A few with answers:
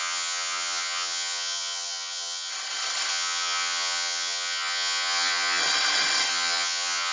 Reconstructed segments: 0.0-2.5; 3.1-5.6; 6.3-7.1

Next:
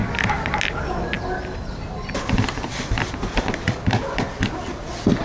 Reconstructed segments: none